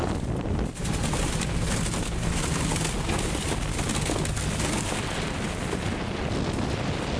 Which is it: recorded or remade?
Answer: recorded